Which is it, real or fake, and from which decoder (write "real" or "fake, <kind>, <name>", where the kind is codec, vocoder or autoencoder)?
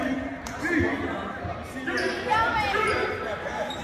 real